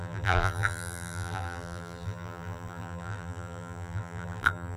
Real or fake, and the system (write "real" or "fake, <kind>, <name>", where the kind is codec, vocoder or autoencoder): fake, vocoder, BigVGAN v2